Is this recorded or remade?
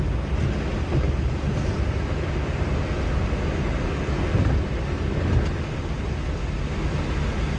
recorded